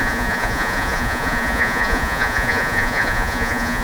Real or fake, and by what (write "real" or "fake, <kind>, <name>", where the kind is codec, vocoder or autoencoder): fake, vocoder, Vocos